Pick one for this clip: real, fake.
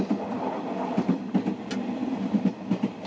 real